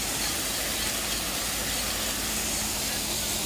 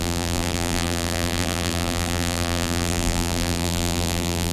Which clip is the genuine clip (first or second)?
first